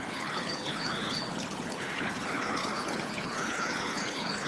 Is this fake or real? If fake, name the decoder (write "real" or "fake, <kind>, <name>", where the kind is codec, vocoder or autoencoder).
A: fake, codec, HILCodec